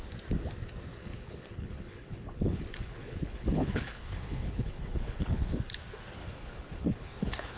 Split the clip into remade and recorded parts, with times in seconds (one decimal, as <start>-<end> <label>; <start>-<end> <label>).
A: 0.0-0.9 recorded; 0.9-5.5 remade; 5.5-6.2 recorded; 6.2-7.6 remade